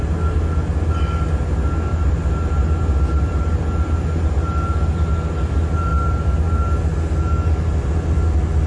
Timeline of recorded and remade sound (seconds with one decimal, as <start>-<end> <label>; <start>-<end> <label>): 0.0-8.7 recorded